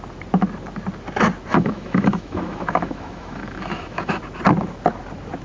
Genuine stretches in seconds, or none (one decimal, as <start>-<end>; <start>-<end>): 0.0-1.5; 4.2-5.4